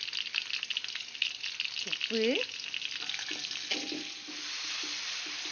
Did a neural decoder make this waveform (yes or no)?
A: no